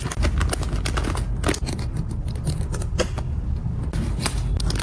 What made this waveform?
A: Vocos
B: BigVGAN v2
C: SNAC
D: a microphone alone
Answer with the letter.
D